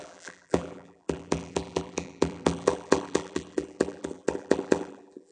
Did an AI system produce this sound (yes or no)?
yes